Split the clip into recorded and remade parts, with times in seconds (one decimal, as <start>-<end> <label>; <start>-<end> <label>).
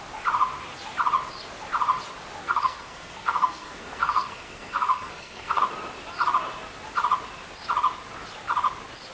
0.0-2.4 recorded; 2.4-5.6 remade; 5.6-9.1 recorded